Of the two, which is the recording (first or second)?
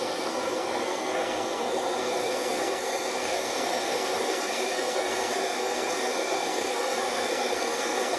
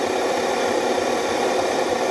second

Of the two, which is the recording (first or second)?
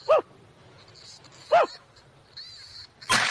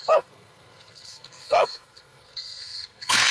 first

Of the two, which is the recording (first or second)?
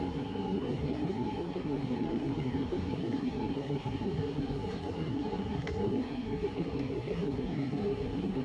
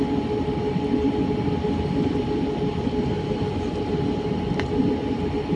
second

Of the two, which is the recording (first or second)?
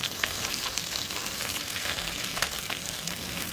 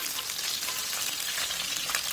second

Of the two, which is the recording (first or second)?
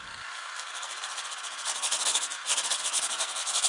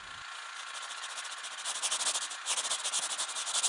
second